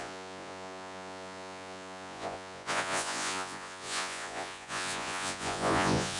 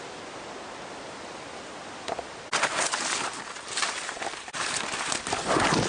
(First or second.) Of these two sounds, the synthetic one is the first